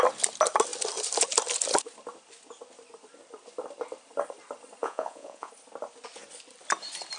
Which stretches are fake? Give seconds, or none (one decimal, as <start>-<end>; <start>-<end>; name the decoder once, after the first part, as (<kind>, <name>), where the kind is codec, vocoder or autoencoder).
4.8-5.5 (vocoder, Vocos)